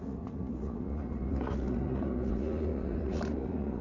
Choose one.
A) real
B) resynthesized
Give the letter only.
B